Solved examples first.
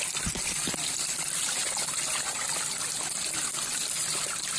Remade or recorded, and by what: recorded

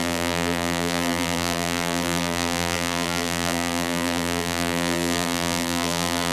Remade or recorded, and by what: remade, vocoder, BigVGAN v2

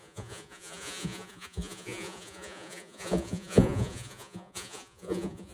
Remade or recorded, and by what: remade, vocoder, Vocos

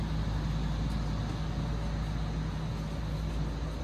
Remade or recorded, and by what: recorded